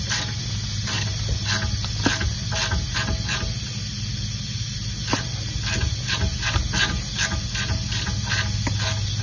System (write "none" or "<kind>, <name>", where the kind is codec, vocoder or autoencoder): none